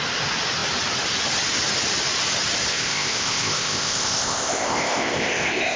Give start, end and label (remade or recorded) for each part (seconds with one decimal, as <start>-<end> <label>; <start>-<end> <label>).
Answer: 0.0-2.7 recorded; 2.7-5.8 remade